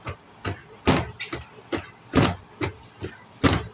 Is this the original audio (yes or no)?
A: yes